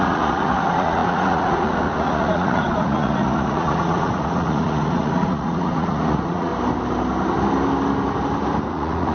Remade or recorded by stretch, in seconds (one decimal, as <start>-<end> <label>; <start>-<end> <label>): 0.0-6.5 remade; 6.5-8.7 recorded; 8.7-9.1 remade

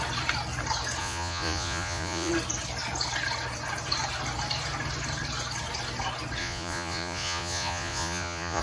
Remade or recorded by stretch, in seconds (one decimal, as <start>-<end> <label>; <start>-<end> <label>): 0.0-1.0 recorded; 1.0-2.3 remade; 2.3-6.4 recorded; 6.4-8.6 remade

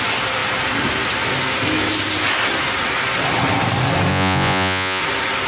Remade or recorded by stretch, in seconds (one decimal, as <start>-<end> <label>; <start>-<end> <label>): 0.0-4.1 recorded; 4.1-5.0 remade; 5.0-5.5 recorded

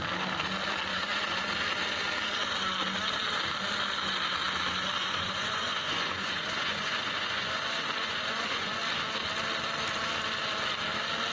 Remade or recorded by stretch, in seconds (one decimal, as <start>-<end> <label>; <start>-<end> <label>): 0.0-0.9 recorded; 0.9-1.5 remade; 1.5-5.0 recorded; 5.0-8.8 remade; 8.8-11.3 recorded